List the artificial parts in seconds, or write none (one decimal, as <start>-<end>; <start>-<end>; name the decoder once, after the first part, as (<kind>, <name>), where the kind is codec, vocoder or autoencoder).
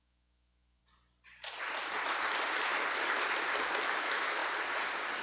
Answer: 0.0-0.8 (autoencoder, DAC-VAE); 3.9-4.4